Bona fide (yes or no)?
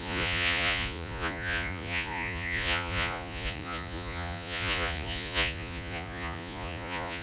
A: no